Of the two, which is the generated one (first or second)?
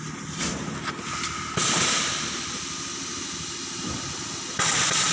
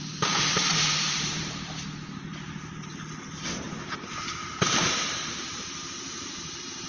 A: second